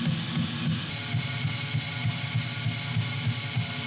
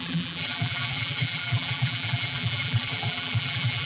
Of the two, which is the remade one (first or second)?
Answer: second